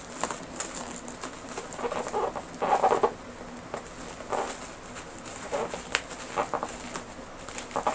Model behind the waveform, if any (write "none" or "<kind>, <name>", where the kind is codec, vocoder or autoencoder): none